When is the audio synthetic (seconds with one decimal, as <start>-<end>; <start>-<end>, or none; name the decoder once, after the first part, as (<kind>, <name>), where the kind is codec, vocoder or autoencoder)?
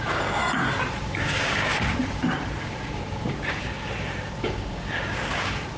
0.0-0.4 (codec, DAC); 1.2-1.7; 2.6-5.8